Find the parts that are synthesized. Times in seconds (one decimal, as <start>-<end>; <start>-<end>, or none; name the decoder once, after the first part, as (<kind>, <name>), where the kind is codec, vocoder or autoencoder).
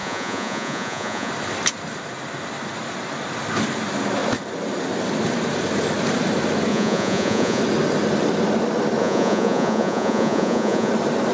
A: 0.0-1.3 (vocoder, Vocos); 6.7-7.6; 9.0-10.9